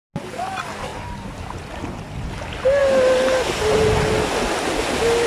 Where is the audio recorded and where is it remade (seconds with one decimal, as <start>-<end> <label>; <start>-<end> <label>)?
0.0-5.3 recorded